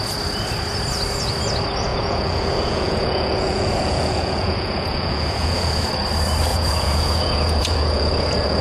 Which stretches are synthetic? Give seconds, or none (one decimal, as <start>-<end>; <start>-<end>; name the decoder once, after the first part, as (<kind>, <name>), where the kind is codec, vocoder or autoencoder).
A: 1.9-5.9 (vocoder, Vocos); 6.5-8.6